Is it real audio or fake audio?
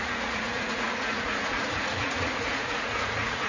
fake